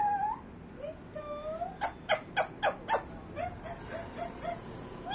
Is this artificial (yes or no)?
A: no